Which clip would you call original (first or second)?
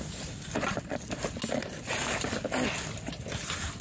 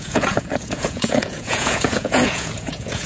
first